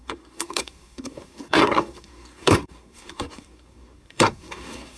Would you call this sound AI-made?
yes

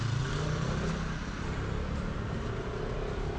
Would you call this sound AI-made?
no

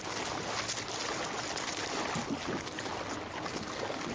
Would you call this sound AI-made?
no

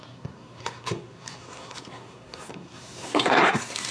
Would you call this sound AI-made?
yes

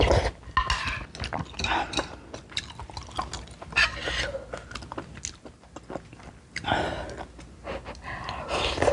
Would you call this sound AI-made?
no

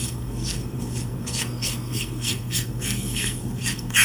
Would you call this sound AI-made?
yes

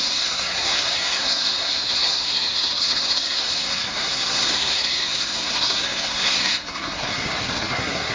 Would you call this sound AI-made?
yes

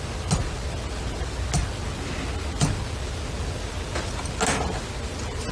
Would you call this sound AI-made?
no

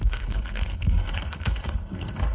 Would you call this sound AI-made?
yes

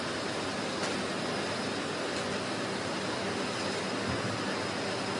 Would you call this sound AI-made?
no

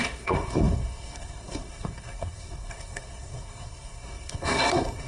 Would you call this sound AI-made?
yes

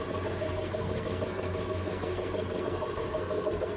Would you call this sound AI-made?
yes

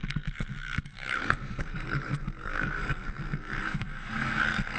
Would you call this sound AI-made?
yes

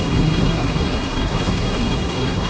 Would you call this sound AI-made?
yes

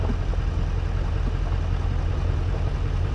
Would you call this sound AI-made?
no